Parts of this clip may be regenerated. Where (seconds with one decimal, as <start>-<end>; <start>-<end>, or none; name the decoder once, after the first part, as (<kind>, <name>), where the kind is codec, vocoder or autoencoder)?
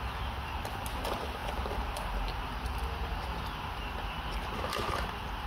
none